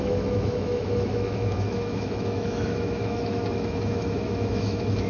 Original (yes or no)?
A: no